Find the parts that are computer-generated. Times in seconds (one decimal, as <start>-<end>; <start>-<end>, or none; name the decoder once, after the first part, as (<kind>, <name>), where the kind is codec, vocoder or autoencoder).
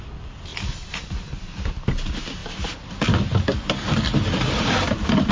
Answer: 0.5-1.3 (vocoder, BigVGAN v2); 2.4-3.3; 3.9-5.3